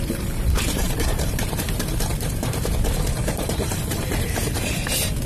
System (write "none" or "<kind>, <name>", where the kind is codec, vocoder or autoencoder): vocoder, BigVGAN v2